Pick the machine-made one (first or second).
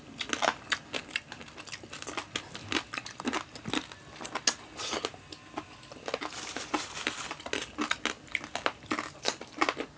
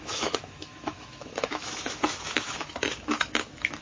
second